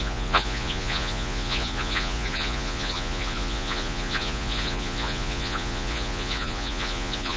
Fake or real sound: fake